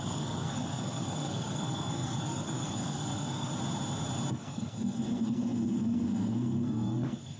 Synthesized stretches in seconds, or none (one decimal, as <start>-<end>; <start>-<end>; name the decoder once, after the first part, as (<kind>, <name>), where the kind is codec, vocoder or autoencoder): 0.0-3.5 (codec, SNAC); 4.3-7.4